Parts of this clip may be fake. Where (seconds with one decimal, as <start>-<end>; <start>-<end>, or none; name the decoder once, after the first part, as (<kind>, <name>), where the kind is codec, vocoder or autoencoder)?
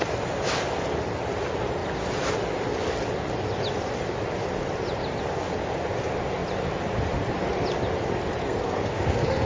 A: 8.4-9.5 (codec, SNAC)